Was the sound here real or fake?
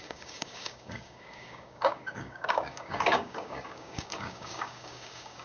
fake